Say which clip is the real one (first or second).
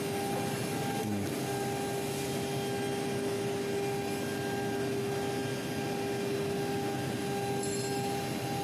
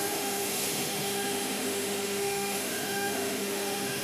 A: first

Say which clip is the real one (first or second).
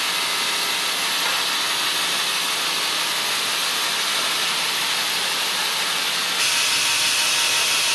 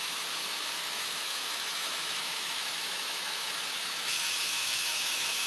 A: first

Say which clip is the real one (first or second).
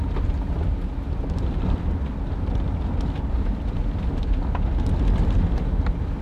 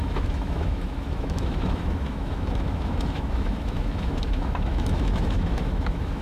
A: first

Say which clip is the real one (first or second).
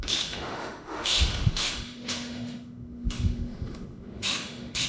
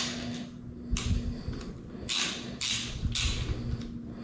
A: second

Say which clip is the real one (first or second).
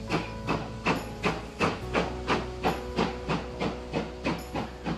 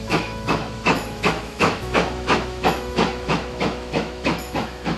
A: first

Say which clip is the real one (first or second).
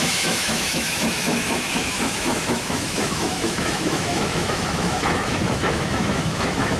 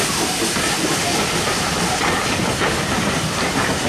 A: second